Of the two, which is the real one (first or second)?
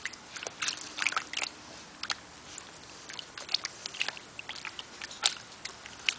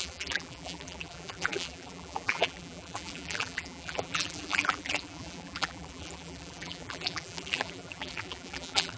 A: first